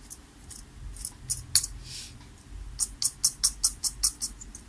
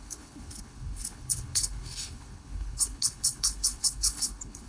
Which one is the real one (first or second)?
first